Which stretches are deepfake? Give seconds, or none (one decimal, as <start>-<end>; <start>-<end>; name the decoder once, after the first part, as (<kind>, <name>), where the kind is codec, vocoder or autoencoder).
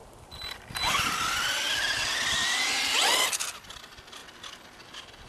0.0-0.6 (vocoder, BigVGAN v2)